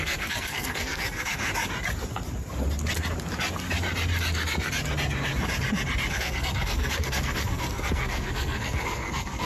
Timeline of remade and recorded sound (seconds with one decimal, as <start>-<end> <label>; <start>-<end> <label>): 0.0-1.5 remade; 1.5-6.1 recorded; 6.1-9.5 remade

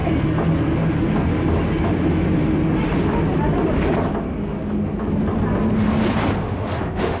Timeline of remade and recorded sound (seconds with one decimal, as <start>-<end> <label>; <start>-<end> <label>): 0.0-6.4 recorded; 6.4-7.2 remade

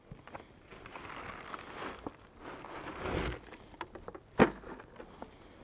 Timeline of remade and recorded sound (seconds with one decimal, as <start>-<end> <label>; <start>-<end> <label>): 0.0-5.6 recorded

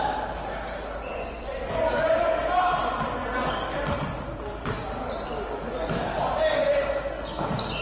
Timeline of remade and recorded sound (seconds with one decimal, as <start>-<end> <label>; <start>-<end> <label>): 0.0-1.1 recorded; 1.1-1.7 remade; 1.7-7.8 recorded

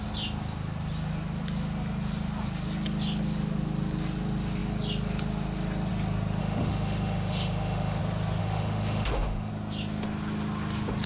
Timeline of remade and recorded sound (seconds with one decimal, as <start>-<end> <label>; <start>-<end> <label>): 0.0-6.4 recorded; 6.4-8.0 remade; 8.0-8.4 recorded; 8.4-9.5 remade; 9.5-11.1 recorded